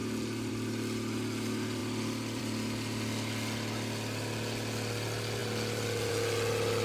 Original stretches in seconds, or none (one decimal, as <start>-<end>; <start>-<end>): 0.0-6.8